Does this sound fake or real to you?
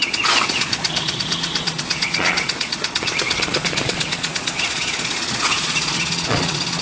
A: fake